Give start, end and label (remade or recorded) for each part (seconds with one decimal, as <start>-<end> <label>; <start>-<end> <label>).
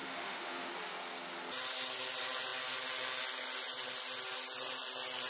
0.0-0.7 remade; 0.7-5.3 recorded